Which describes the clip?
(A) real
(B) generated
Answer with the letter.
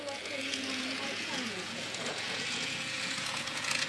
B